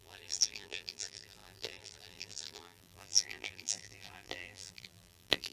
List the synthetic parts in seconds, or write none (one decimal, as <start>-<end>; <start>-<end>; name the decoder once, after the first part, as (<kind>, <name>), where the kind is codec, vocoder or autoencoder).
0.0-5.5 (vocoder, BigVGAN v2)

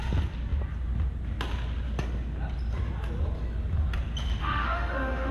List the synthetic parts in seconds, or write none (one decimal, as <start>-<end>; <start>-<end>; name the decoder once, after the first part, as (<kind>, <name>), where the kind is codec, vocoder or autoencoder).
4.4-5.3 (autoencoder, DAC-VAE)

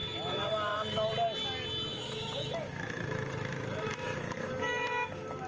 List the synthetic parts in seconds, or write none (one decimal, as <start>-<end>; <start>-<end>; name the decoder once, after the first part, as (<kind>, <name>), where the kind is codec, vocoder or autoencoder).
0.0-1.1 (autoencoder, DAC-VAE); 1.9-5.5